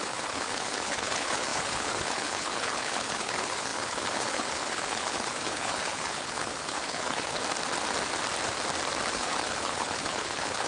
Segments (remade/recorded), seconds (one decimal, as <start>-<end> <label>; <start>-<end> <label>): 0.0-7.4 remade; 7.4-9.1 recorded; 9.1-10.7 remade